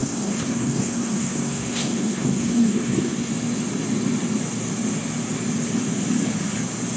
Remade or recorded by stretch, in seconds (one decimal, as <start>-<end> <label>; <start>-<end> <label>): 0.0-3.3 remade; 3.3-7.0 recorded